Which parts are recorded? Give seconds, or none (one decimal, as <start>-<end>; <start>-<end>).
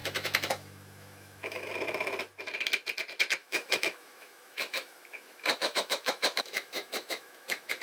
1.7-3.4